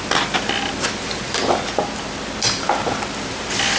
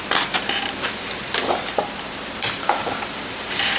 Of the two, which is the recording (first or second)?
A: first